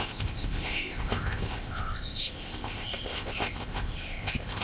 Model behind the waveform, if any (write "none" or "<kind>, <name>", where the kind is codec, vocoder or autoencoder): codec, ZipCodec